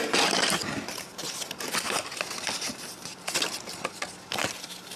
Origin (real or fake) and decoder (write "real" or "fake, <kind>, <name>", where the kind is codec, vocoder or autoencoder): real